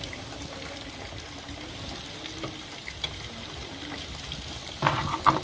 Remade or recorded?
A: recorded